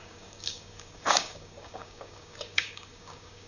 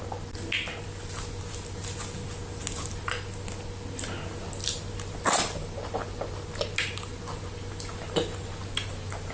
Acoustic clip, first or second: second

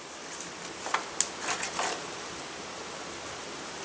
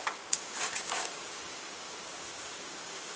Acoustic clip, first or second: first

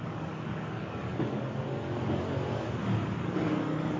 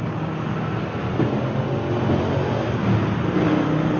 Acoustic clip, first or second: second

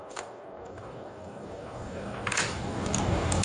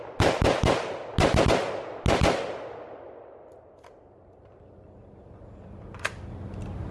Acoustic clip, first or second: second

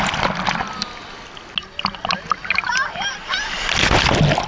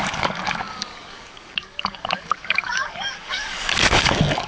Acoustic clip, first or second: first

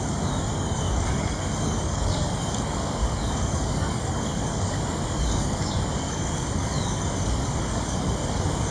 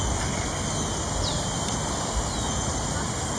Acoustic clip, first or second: second